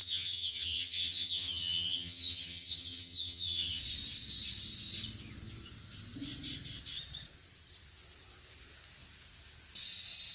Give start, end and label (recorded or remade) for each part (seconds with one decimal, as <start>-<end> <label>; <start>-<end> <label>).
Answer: 0.0-3.8 remade; 3.8-10.3 recorded